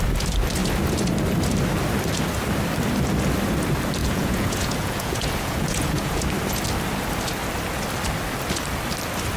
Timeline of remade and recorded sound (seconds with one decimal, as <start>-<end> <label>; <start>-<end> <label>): 0.0-4.0 recorded; 4.0-6.2 remade; 6.2-9.4 recorded